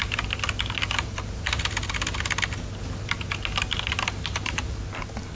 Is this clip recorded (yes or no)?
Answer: yes